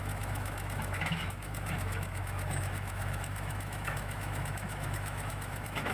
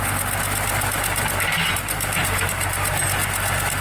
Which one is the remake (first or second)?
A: first